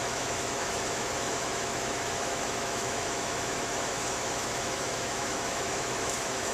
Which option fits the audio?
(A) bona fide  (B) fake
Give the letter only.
B